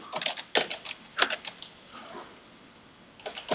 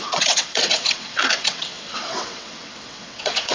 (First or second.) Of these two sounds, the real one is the first